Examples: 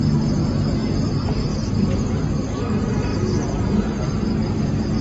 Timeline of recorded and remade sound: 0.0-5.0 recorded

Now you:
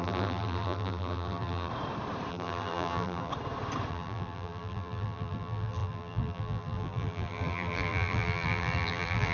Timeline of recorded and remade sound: 0.0-1.7 remade; 1.7-2.3 recorded; 2.3-3.3 remade; 3.3-3.9 recorded; 3.9-9.3 remade

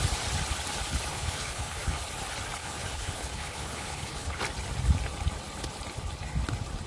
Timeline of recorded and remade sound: 0.0-1.1 recorded; 1.1-2.0 remade; 2.0-2.6 recorded; 2.6-4.4 remade; 4.4-6.9 recorded

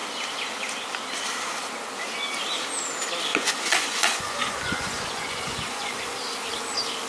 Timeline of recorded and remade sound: 0.0-3.3 recorded; 3.3-6.0 remade; 6.0-7.1 recorded